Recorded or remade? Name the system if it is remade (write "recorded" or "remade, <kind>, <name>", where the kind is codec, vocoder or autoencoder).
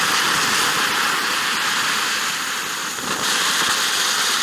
remade, vocoder, BigVGAN v2